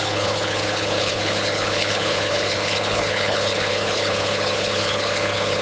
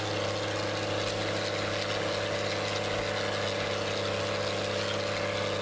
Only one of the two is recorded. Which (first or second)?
second